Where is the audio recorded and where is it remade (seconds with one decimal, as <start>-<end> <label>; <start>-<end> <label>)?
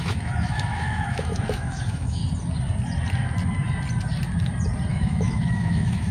0.0-2.2 remade; 2.2-4.9 recorded; 4.9-6.1 remade